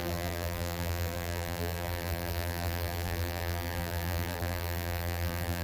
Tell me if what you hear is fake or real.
fake